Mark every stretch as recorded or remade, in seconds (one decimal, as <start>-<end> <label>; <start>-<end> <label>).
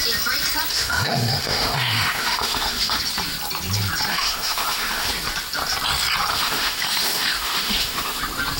0.0-0.7 recorded; 0.7-3.0 remade; 3.0-4.1 recorded; 4.1-5.1 remade; 5.1-6.3 recorded; 6.3-8.2 remade; 8.2-8.6 recorded